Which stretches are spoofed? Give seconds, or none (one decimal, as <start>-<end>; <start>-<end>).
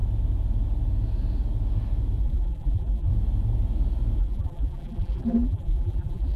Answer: 2.2-3.1; 4.2-6.4